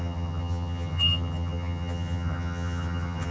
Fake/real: fake